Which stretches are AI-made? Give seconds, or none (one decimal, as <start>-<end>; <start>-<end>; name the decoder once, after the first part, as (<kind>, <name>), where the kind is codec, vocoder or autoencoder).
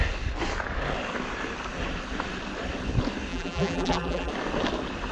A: 3.3-4.3 (vocoder, BigVGAN v2)